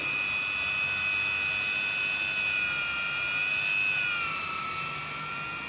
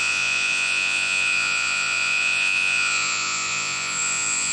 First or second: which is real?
first